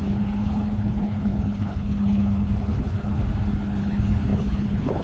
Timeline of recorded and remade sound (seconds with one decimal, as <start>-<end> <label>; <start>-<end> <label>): 0.0-3.2 remade; 3.2-3.8 recorded; 3.8-5.0 remade